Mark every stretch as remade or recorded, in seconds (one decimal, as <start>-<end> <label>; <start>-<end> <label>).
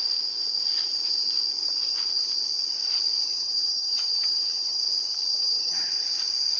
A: 0.0-3.3 recorded; 3.3-4.8 remade; 4.8-5.3 recorded; 5.3-5.9 remade; 5.9-6.6 recorded